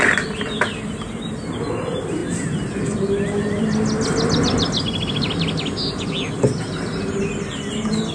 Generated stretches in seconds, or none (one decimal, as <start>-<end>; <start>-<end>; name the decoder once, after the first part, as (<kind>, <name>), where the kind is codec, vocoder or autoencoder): none